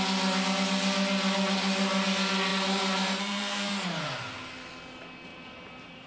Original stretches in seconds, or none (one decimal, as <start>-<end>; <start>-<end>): 0.0-2.5; 4.0-5.3